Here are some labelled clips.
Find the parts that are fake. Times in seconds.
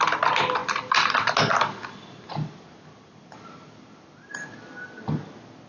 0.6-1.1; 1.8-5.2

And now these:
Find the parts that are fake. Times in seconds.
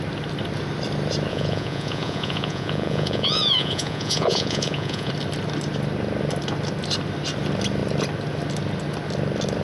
1.3-5.1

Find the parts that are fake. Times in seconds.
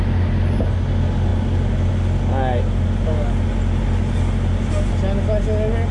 none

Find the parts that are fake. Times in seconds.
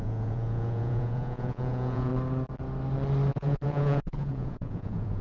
0.0-2.1; 3.3-5.2